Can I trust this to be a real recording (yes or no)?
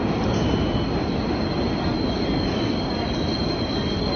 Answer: yes